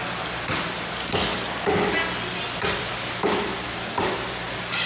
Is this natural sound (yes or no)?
yes